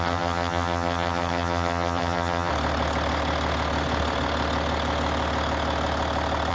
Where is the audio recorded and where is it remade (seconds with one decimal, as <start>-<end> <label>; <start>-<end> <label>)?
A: 0.0-2.5 remade; 2.5-6.5 recorded